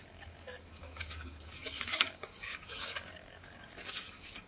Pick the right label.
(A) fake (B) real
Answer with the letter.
A